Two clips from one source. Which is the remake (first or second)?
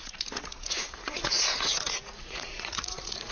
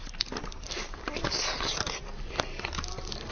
first